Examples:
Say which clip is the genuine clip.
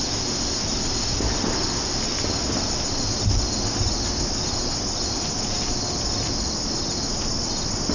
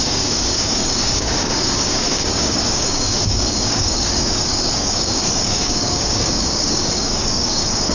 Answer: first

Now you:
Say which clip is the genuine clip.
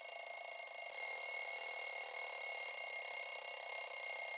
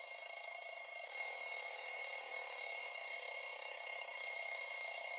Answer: first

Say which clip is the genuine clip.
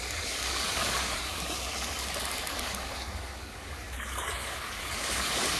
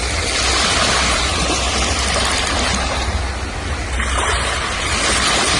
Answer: second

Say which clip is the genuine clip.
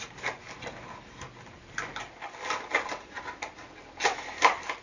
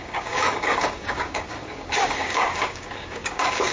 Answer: first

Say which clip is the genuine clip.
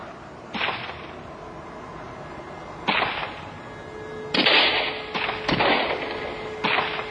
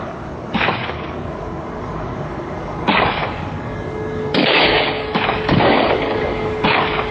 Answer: first